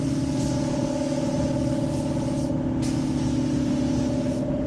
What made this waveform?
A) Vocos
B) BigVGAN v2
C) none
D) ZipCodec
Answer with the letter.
C